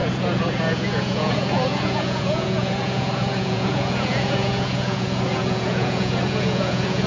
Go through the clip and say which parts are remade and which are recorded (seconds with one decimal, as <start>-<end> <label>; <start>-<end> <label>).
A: 0.0-7.1 remade